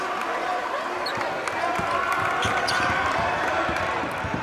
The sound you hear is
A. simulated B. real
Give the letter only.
B